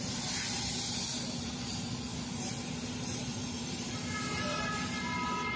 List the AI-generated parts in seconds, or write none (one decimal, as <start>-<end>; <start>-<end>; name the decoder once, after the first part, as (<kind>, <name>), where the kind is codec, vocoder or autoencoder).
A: 3.3-5.6 (vocoder, BigVGAN v2)